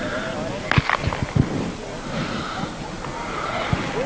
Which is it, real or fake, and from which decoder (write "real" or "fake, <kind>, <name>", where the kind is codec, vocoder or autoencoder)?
real